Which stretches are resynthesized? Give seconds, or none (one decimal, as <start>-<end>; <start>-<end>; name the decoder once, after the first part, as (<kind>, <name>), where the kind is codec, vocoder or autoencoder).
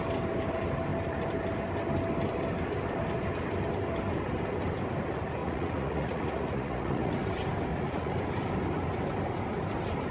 5.4-7.2 (vocoder, Vocos); 7.7-8.2